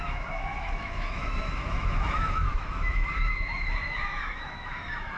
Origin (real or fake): fake